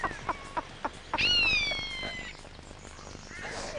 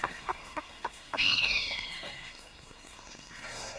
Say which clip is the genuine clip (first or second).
first